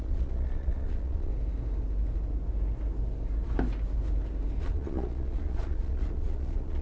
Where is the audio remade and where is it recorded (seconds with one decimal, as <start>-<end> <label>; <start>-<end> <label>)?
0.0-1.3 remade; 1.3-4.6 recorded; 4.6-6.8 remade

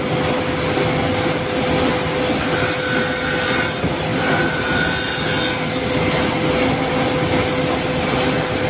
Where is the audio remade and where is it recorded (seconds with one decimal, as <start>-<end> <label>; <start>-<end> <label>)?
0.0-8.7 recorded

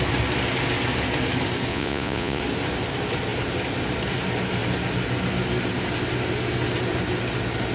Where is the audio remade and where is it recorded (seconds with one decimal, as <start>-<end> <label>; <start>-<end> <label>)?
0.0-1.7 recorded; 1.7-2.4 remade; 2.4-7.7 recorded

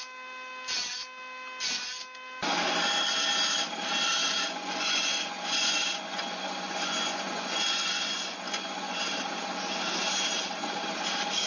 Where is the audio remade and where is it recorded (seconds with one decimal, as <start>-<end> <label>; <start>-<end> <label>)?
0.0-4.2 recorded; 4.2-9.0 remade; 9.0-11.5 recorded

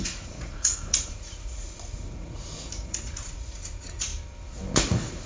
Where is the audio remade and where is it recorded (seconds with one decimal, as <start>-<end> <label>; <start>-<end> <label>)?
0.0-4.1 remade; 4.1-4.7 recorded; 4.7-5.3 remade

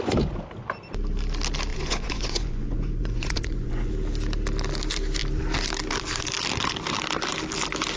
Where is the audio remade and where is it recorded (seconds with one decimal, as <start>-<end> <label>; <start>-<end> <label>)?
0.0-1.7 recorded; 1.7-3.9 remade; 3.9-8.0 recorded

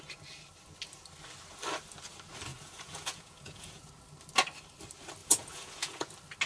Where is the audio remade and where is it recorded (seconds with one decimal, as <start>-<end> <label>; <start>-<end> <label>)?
0.0-2.5 recorded; 2.5-3.9 remade; 3.9-5.2 recorded; 5.2-6.1 remade; 6.1-6.5 recorded

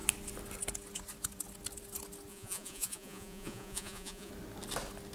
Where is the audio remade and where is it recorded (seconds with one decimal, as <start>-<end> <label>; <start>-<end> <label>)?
0.0-2.3 recorded; 2.3-4.3 remade; 4.3-5.1 recorded